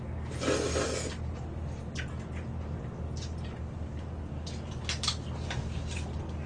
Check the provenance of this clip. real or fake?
real